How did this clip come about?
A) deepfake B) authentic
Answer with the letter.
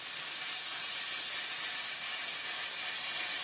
B